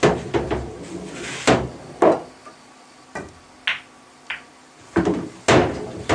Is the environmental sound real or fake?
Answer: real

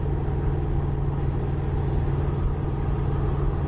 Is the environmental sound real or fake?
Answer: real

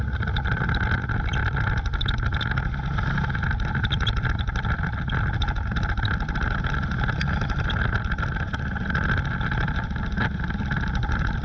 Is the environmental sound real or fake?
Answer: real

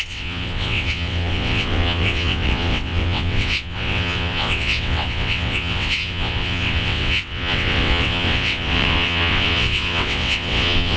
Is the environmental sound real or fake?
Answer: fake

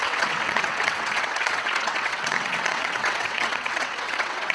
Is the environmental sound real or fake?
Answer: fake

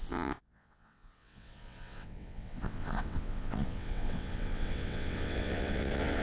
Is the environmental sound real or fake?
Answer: fake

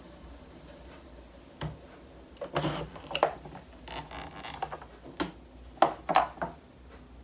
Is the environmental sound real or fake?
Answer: real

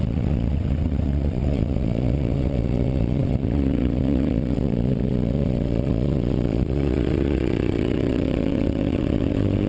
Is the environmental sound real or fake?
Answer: fake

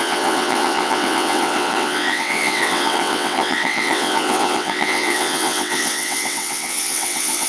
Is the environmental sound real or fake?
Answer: fake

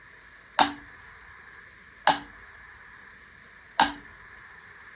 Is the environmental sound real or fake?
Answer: real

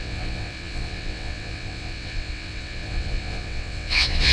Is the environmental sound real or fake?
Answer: fake